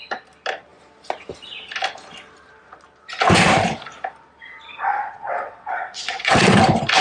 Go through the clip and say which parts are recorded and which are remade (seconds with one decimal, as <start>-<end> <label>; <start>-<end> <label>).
0.0-4.9 recorded; 4.9-6.6 remade; 6.6-7.0 recorded